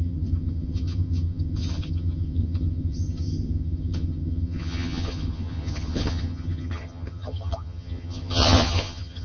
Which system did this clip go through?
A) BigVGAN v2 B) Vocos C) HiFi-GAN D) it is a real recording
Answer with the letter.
C